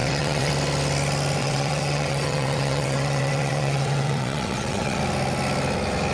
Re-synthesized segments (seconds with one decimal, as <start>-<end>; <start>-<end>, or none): 0.0-0.5; 1.4-5.0